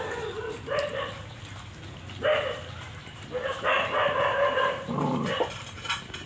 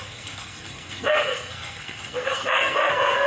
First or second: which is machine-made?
second